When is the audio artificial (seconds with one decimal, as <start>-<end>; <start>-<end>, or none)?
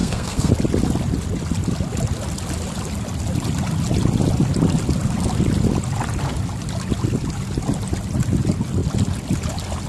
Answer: 0.0-0.5